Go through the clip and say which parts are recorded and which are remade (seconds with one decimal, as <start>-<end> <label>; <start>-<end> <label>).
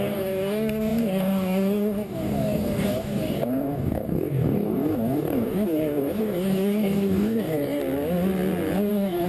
0.0-7.8 remade; 7.8-8.9 recorded; 8.9-9.3 remade